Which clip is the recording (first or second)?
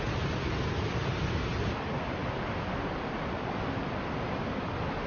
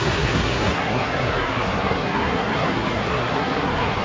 first